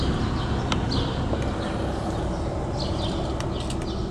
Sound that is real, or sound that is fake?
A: real